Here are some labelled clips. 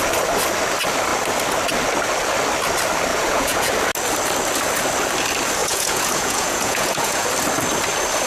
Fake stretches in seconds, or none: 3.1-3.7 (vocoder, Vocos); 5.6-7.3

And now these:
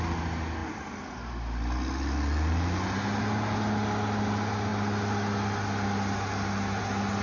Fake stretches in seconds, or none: none

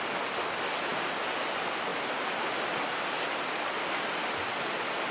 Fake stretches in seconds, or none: none

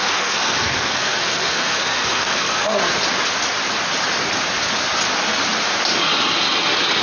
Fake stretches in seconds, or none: 0.0-2.8 (codec, SNAC)

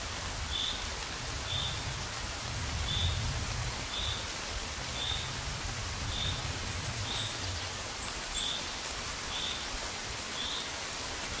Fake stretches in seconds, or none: none

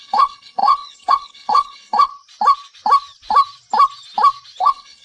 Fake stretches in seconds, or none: 0.0-2.1 (codec, HILCodec); 4.6-5.0

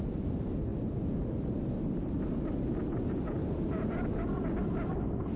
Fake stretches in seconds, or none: none